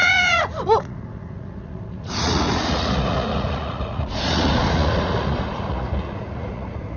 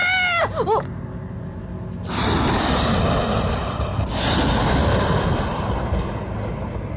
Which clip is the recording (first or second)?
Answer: second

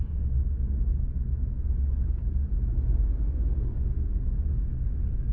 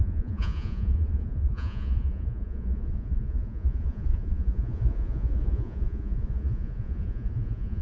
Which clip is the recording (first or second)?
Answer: first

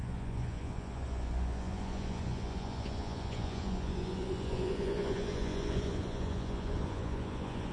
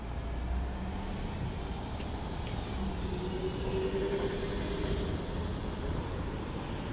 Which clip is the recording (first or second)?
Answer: second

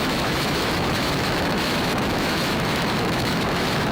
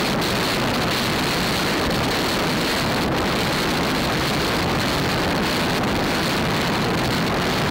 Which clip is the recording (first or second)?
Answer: second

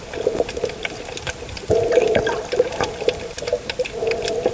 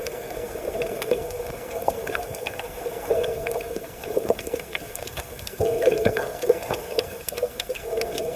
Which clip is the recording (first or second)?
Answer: first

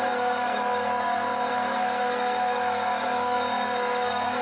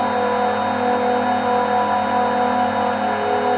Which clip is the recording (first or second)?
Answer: second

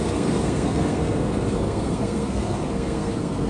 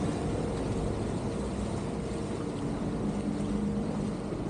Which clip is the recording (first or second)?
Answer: second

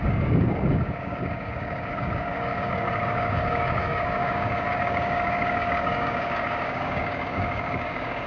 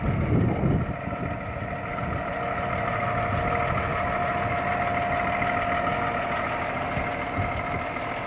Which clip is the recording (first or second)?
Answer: second